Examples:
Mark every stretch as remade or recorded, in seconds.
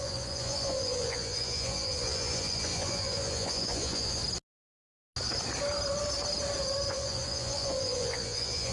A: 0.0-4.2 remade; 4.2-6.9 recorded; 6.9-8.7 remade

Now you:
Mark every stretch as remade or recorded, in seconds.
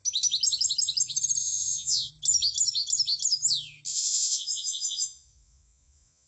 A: 0.0-1.4 recorded; 1.4-2.1 remade; 2.1-3.9 recorded; 3.9-6.3 remade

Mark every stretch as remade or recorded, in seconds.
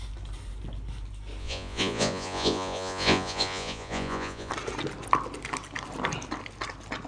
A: 0.0-1.4 recorded; 1.4-4.5 remade; 4.5-7.1 recorded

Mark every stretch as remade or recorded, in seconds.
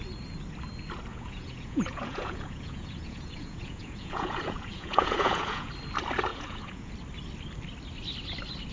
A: 0.0-1.1 recorded; 1.1-5.7 remade; 5.7-6.3 recorded; 6.3-6.9 remade; 6.9-8.7 recorded